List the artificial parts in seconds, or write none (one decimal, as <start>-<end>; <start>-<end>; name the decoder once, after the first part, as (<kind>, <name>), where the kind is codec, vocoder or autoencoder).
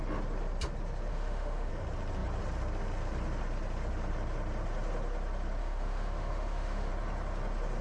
1.1-1.7 (autoencoder, DAC-VAE); 5.6-6.9